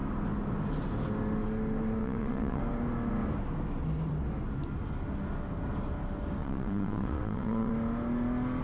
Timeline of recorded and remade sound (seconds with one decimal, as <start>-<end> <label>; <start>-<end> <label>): 0.0-2.0 recorded; 2.0-2.6 remade; 2.6-6.4 recorded; 6.4-7.7 remade; 7.7-8.6 recorded